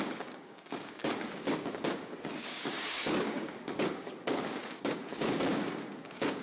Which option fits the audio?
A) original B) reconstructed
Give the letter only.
B